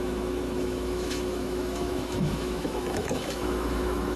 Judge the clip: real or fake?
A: fake